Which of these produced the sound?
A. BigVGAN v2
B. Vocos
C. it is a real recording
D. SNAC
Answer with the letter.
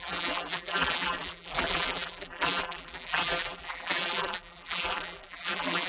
A